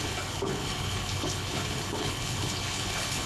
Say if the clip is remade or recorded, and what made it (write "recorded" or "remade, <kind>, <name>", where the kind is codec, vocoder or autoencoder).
remade, codec, HILCodec